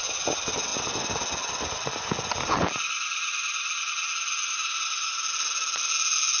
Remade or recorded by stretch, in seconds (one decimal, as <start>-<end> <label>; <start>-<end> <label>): 0.0-6.4 recorded

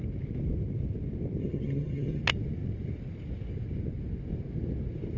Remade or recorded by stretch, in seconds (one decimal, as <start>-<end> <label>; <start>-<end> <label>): 0.0-1.4 recorded; 1.4-2.2 remade; 2.2-5.2 recorded

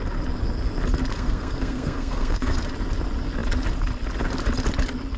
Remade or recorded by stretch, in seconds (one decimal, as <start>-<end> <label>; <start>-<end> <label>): 0.0-1.1 recorded; 1.1-2.6 remade; 2.6-5.2 recorded

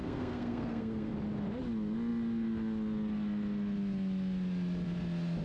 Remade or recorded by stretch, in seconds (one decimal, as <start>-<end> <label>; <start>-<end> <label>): 0.0-1.1 remade; 1.1-5.4 recorded

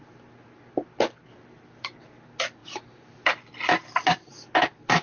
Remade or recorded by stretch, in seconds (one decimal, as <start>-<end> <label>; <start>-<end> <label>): 0.0-5.0 recorded